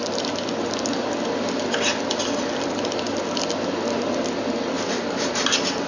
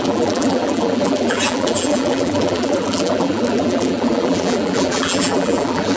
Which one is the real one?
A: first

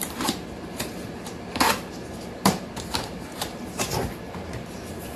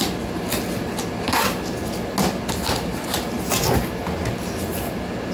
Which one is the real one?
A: second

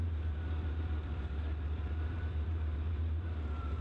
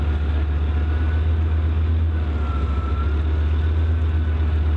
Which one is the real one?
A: second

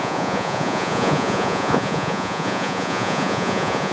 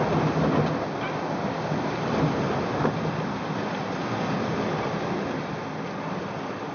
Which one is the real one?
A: second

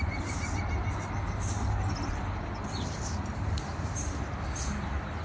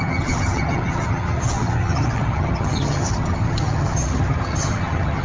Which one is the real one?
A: first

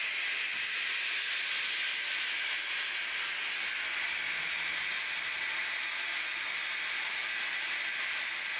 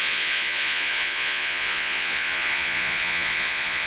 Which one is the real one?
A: first